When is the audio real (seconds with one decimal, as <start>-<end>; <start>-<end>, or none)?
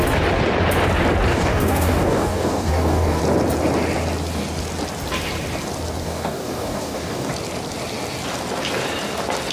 0.0-1.3; 3.2-6.0; 7.3-9.5